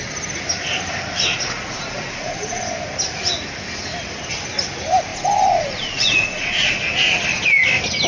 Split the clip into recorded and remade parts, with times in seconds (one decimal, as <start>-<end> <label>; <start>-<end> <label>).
0.0-1.3 recorded; 1.3-2.6 remade; 2.6-5.1 recorded; 5.1-6.8 remade; 6.8-8.1 recorded

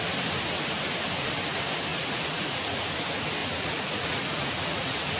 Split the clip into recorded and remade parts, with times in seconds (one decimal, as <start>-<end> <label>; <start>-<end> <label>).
0.0-1.9 recorded; 1.9-2.9 remade; 2.9-3.4 recorded; 3.4-5.2 remade

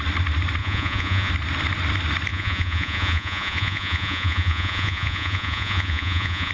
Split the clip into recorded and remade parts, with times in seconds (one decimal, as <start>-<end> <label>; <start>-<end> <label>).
0.0-0.6 recorded; 0.6-1.3 remade; 1.3-2.3 recorded; 2.3-6.5 remade

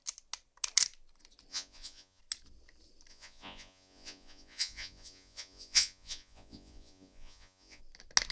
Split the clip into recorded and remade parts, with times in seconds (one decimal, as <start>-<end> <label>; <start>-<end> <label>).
0.0-1.5 recorded; 1.5-2.2 remade; 2.2-3.1 recorded; 3.1-7.8 remade; 7.8-8.3 recorded

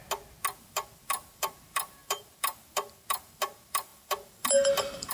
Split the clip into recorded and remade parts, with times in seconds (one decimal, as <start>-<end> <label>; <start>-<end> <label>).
0.0-0.6 recorded; 0.6-5.1 remade